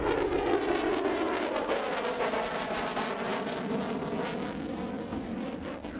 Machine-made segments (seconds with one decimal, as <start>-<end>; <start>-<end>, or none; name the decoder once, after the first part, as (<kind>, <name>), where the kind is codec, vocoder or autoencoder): none